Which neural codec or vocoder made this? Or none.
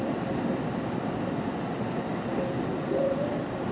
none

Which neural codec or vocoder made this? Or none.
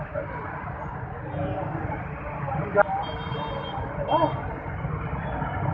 none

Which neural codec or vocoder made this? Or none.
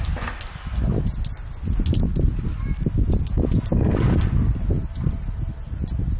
none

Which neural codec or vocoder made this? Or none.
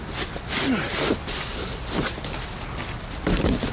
none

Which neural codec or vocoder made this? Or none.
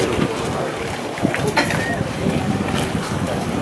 none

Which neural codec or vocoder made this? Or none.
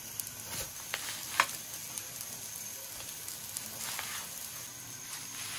none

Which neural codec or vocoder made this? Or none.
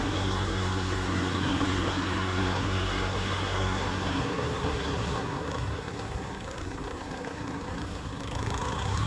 codec, SNAC